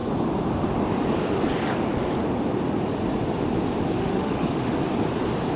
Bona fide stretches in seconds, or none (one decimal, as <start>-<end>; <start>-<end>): 0.0-4.0; 4.7-5.6